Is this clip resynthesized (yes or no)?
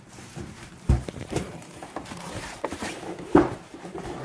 yes